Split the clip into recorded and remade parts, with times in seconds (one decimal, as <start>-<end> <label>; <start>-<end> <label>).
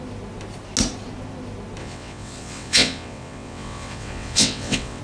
0.0-1.8 recorded; 1.8-5.0 remade